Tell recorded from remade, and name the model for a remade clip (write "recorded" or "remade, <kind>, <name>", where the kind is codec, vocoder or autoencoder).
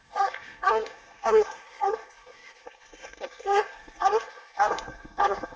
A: remade, codec, SNAC